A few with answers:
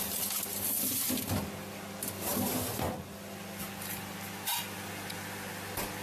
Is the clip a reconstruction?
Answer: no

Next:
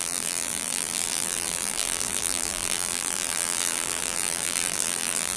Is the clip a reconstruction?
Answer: yes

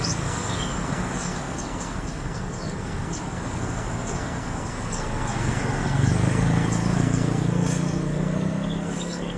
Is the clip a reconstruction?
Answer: yes